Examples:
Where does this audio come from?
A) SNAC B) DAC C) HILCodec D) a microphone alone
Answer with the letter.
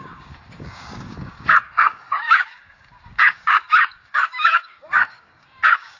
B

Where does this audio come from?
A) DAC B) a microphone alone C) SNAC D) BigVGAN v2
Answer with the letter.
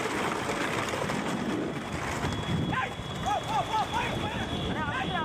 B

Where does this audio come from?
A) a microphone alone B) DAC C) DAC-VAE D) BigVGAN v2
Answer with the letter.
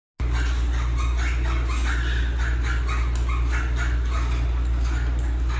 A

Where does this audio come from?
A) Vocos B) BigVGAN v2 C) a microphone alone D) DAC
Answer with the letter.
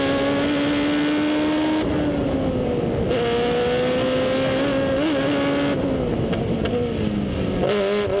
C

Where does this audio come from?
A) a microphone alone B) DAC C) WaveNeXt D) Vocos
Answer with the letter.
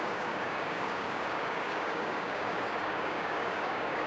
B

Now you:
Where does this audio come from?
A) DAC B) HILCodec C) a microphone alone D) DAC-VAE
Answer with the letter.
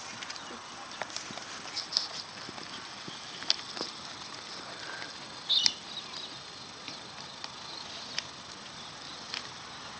C